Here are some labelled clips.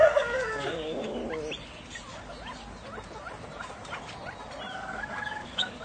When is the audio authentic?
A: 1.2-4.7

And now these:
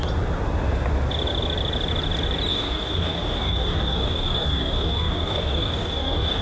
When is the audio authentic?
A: 0.0-2.5

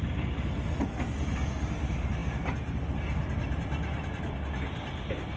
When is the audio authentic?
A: 0.0-5.4

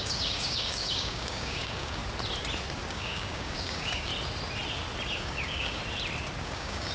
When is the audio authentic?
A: 2.0-2.9; 4.1-5.1; 5.8-6.4

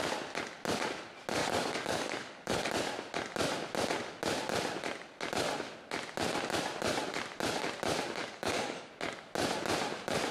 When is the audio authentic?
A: 0.0-1.4; 2.7-8.2; 8.9-10.3